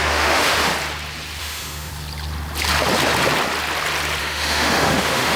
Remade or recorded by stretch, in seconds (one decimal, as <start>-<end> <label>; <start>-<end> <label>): 0.0-0.7 remade; 0.7-1.4 recorded; 1.4-1.9 remade; 1.9-4.2 recorded; 4.2-5.4 remade